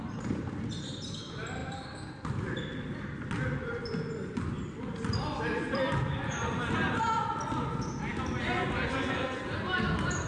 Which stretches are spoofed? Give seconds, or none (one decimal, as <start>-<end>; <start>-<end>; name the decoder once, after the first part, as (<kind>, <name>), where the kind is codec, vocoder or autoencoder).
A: 8.9-9.4 (codec, SNAC)